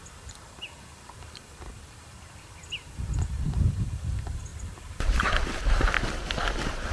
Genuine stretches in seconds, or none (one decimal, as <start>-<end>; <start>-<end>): none